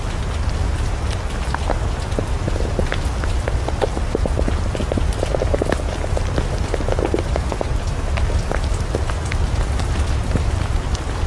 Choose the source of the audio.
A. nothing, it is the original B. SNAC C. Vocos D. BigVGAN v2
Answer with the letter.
A